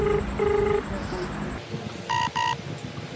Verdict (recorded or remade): recorded